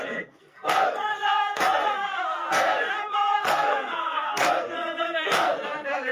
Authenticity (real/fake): fake